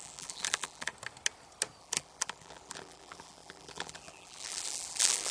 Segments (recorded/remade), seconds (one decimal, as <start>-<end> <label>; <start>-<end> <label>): 0.0-0.9 remade; 0.9-1.8 recorded; 1.8-5.3 remade